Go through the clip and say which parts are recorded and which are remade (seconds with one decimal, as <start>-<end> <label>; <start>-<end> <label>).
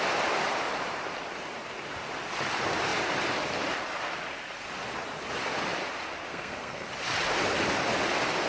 0.0-6.3 recorded; 6.3-6.9 remade; 6.9-8.5 recorded